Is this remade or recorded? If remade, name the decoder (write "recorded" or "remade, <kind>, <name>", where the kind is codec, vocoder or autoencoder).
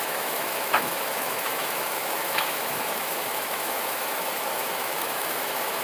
remade, autoencoder, DAC-VAE